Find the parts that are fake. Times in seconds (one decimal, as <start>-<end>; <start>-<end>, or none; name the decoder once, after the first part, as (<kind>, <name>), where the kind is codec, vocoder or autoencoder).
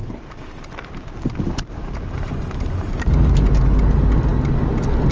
0.0-3.1 (vocoder, BigVGAN v2)